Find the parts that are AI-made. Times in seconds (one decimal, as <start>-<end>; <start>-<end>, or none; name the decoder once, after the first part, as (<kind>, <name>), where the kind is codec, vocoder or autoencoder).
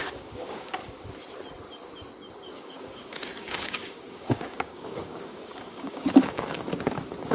0.0-0.8 (codec, DAC); 2.3-7.3